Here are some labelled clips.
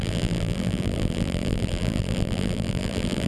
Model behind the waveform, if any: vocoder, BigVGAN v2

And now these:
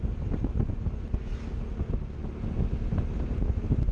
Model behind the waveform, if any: none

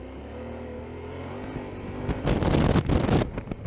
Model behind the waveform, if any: none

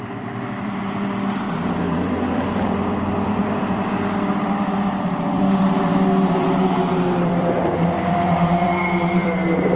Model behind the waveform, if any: vocoder, BigVGAN v2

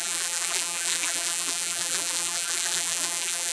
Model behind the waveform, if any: vocoder, BigVGAN v2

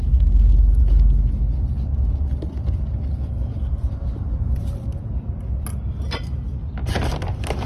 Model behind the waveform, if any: none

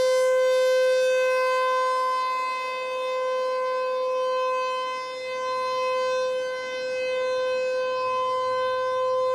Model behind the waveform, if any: none